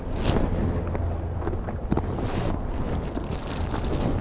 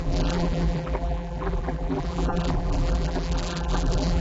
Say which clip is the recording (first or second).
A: first